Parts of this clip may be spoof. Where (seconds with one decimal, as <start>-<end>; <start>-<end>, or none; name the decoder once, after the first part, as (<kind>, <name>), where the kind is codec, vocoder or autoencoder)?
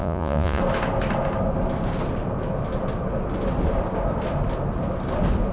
0.0-0.6 (vocoder, Vocos)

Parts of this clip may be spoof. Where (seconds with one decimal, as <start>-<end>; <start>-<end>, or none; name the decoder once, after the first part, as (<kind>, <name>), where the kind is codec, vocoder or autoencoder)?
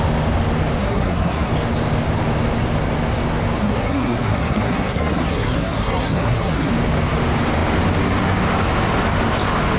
0.8-1.5 (codec, SNAC); 3.6-6.7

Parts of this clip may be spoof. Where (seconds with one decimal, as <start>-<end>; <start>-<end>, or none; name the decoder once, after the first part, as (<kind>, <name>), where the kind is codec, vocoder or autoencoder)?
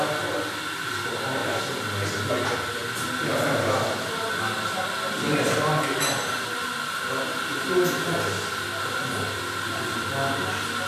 none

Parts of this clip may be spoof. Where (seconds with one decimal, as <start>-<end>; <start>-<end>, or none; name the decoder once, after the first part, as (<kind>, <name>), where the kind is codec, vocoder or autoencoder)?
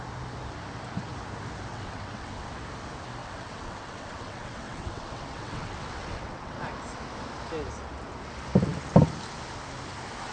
1.7-2.5 (vocoder, WaveNeXt); 3.2-6.6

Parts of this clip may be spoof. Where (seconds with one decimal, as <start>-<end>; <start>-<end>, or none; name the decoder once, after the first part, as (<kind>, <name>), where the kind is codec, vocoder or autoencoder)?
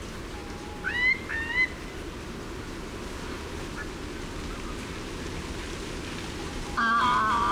none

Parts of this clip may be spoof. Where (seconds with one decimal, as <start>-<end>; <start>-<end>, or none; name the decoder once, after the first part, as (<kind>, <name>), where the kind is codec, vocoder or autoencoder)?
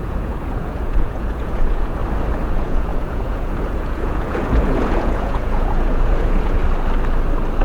0.0-2.0 (vocoder, Vocos); 2.5-6.6